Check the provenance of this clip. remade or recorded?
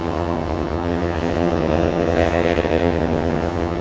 remade